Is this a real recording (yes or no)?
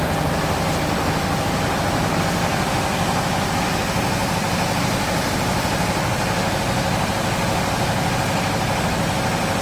yes